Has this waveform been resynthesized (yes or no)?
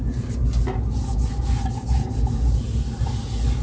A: no